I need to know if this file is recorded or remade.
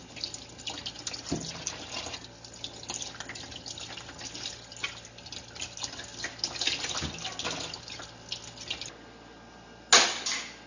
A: recorded